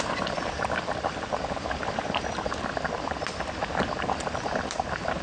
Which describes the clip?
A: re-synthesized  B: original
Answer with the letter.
A